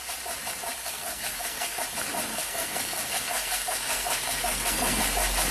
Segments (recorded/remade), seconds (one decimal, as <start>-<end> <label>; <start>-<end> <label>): 0.0-0.8 recorded; 0.8-1.8 remade; 1.8-2.3 recorded; 2.3-5.0 remade; 5.0-5.5 recorded